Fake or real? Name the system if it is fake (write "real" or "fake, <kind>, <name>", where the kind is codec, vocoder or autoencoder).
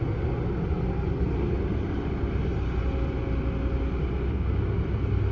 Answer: real